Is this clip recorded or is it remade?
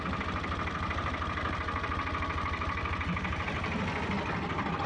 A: recorded